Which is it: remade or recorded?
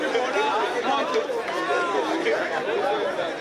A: recorded